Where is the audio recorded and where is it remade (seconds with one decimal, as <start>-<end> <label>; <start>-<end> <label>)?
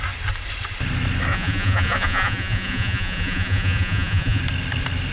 0.0-1.3 recorded; 1.3-4.4 remade; 4.4-5.1 recorded